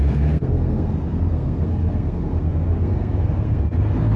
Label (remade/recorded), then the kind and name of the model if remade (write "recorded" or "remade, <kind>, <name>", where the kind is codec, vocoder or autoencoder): remade, codec, SNAC